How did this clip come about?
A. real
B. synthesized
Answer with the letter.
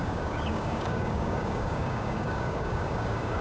B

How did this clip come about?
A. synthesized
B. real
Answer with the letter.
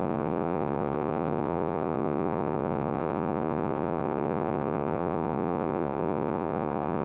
A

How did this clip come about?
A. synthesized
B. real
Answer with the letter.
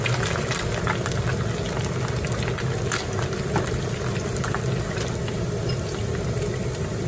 B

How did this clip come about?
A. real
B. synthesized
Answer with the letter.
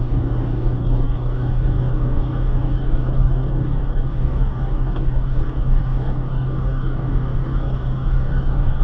B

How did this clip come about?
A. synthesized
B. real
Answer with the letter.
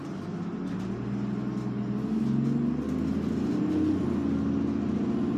B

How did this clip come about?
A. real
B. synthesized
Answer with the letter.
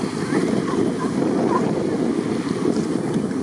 A